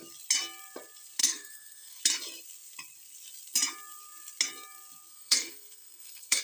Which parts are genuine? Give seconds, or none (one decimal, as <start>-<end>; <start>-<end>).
0.0-1.2; 2.0-5.1